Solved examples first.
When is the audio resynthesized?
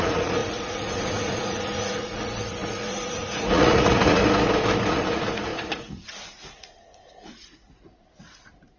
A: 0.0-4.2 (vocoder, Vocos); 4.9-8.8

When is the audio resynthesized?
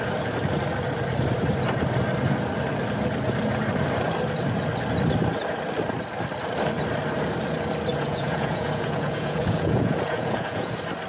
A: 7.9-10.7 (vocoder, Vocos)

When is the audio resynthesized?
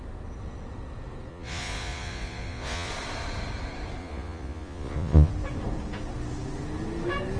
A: 1.3-2.9 (vocoder, Vocos); 4.0-5.3